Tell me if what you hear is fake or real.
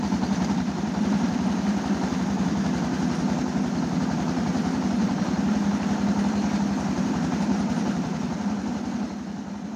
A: fake